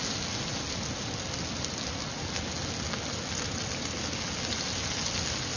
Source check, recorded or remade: recorded